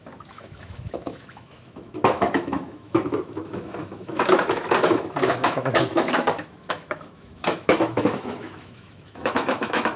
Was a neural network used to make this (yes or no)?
yes